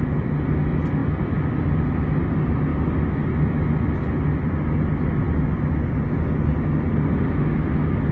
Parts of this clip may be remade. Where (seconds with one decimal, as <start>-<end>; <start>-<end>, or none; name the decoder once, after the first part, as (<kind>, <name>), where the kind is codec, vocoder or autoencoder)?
none